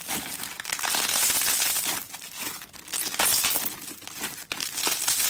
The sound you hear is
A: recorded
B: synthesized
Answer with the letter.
A